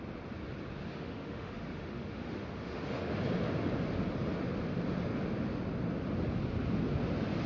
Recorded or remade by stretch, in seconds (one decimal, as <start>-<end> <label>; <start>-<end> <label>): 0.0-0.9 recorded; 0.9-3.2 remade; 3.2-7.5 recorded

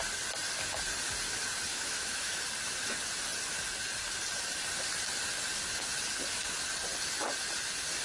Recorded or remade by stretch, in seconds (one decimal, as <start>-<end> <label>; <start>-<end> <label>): 0.0-1.7 recorded; 1.7-2.4 remade; 2.4-8.0 recorded

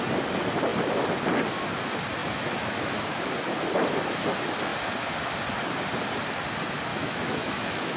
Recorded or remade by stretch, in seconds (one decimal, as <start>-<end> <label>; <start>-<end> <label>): 0.0-2.2 recorded; 2.2-3.3 remade; 3.3-6.9 recorded; 6.9-8.0 remade

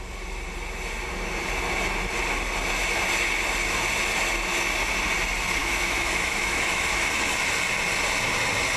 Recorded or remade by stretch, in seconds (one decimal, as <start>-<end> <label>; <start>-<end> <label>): 0.0-5.6 recorded; 5.6-7.1 remade; 7.1-8.8 recorded

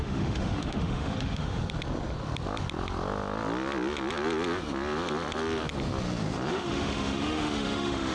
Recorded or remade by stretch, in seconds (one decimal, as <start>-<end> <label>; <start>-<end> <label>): 0.0-1.6 remade; 1.6-6.5 recorded; 6.5-8.1 remade

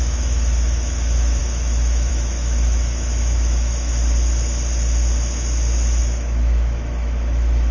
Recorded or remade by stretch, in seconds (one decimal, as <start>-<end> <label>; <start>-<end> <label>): 0.0-3.9 remade; 3.9-6.0 recorded; 6.0-7.7 remade

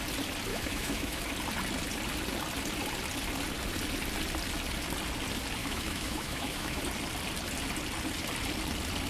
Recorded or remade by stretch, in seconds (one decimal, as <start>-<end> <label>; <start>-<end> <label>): 0.0-0.5 recorded; 0.5-1.2 remade; 1.2-5.6 recorded; 5.6-6.8 remade; 6.8-9.1 recorded

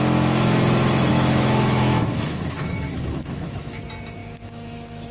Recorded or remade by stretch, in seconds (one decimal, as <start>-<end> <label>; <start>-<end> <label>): 0.0-1.1 recorded; 1.1-3.8 remade; 3.8-4.2 recorded; 4.2-5.1 remade